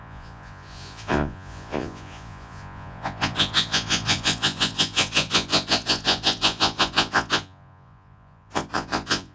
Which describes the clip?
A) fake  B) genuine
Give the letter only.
A